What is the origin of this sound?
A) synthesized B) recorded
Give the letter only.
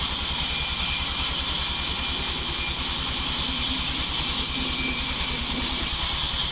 B